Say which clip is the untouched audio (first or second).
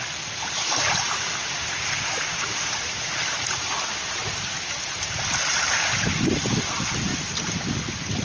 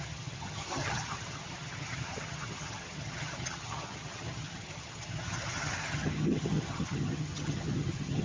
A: first